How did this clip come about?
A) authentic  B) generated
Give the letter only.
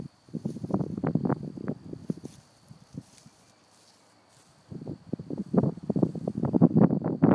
A